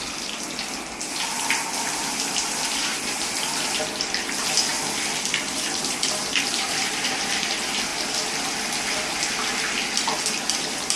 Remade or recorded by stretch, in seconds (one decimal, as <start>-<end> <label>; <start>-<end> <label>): 0.0-11.0 recorded